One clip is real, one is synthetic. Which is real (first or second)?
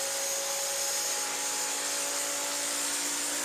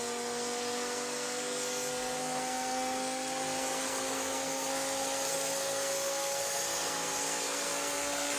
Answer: first